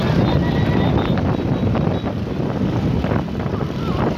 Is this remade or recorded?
recorded